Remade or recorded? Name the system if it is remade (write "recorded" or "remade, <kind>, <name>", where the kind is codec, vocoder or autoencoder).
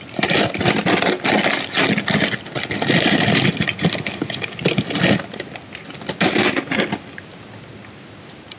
recorded